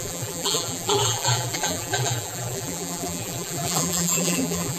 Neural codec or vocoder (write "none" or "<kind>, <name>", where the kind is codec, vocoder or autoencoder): vocoder, BigVGAN v2